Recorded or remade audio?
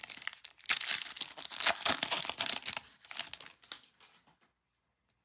recorded